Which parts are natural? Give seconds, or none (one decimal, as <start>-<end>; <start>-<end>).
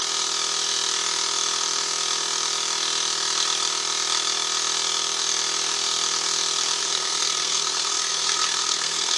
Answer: 0.0-6.8